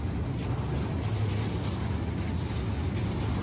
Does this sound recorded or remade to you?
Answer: recorded